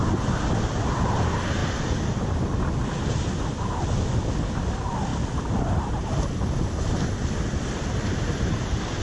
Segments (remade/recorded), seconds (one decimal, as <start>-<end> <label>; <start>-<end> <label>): 0.0-5.1 recorded; 5.1-8.0 remade; 8.0-9.0 recorded